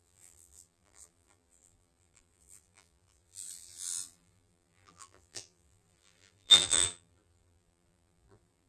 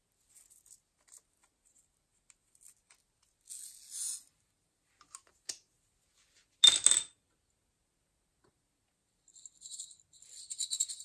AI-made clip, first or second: first